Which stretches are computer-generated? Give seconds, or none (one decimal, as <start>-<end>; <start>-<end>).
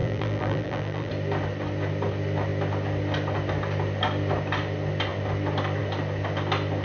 0.0-1.1